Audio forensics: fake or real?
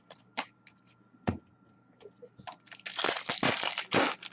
real